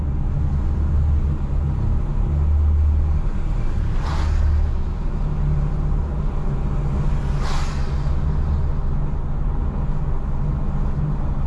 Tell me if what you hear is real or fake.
real